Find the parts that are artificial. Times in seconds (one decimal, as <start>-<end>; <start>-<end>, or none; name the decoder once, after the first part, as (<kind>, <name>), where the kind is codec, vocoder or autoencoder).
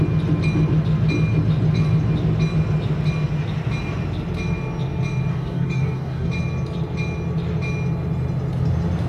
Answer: 5.3-6.3 (codec, DAC)